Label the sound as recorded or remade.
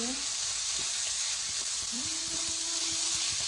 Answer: recorded